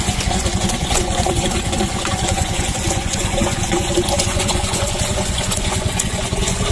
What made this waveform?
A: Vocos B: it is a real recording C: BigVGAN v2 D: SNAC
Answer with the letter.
A